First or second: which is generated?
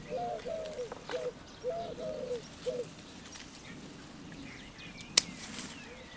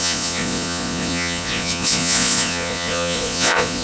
second